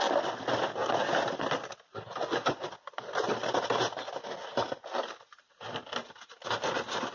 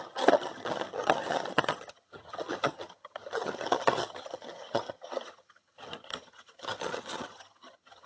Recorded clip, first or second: first